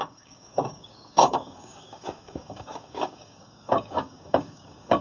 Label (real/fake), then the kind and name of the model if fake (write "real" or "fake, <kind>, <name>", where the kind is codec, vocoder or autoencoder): fake, codec, DAC